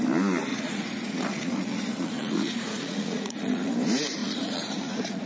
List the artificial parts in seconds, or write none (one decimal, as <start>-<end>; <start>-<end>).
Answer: 0.5-3.7; 4.2-5.3